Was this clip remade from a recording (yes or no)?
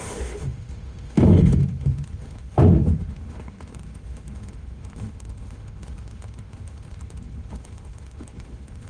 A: yes